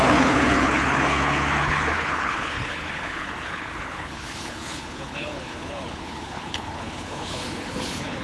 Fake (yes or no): yes